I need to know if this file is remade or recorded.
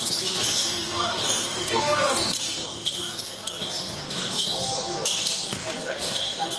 remade